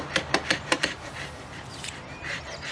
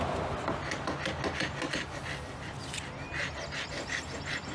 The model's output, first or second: first